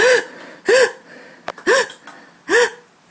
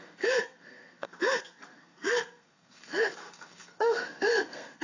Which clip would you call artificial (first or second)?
second